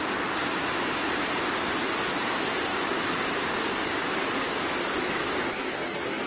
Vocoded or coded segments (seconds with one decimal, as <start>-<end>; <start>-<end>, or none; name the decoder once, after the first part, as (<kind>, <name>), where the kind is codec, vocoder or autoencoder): 2.7-5.7 (codec, DAC)